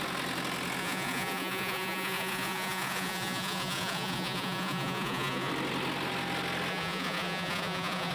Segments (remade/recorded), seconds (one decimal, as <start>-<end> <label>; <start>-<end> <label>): 0.0-0.8 recorded; 0.8-5.5 remade; 5.5-6.7 recorded; 6.7-8.1 remade